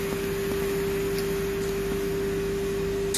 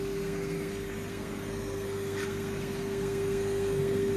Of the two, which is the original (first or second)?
first